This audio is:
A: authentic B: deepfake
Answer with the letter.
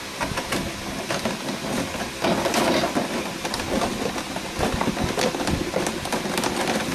A